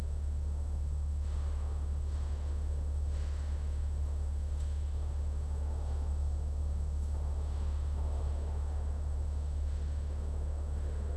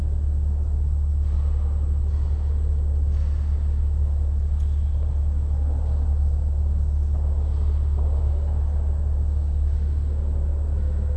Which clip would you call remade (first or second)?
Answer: first